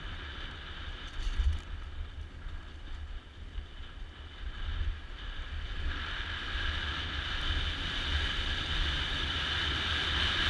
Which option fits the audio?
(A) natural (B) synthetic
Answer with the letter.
A